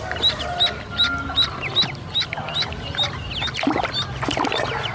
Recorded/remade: recorded